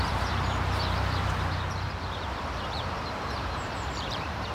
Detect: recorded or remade remade